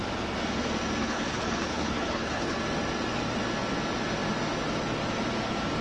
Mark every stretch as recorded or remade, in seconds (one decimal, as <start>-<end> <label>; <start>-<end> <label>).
0.0-1.0 recorded; 1.0-2.6 remade; 2.6-5.8 recorded